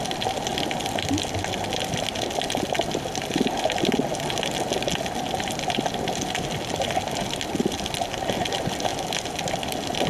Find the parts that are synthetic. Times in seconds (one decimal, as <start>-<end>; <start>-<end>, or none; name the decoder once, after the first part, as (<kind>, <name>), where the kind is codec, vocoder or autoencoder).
none